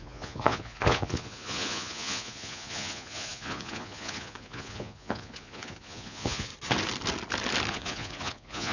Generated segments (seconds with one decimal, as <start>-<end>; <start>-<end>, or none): 0.0-6.5; 7.7-8.7